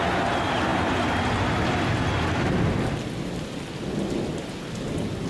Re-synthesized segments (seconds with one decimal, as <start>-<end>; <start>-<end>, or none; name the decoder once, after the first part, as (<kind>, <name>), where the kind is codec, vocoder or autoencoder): none